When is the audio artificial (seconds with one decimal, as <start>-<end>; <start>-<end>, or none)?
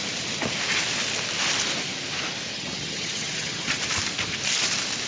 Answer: 2.5-3.8